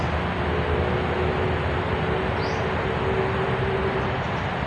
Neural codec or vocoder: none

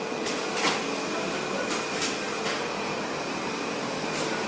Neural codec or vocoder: none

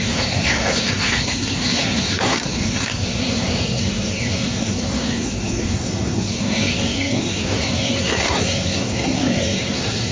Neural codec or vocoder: codec, SNAC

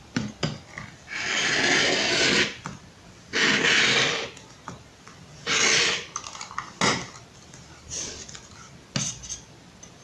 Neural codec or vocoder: none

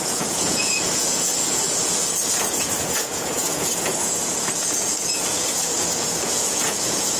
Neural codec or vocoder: vocoder, Vocos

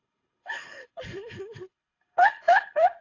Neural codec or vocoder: codec, HILCodec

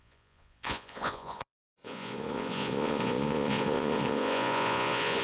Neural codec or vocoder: vocoder, Vocos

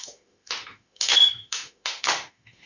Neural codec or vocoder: autoencoder, DAC-VAE